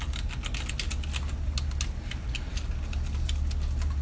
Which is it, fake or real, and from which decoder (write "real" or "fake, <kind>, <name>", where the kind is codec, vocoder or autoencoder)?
real